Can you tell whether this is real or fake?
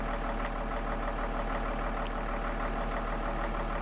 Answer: real